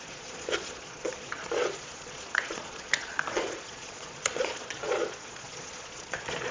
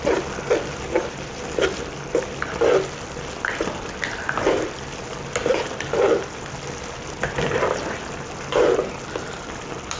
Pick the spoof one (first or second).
first